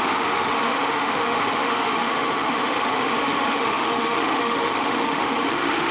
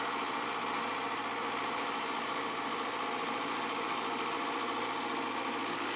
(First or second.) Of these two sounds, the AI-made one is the first